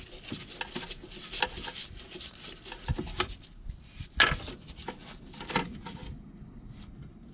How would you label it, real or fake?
real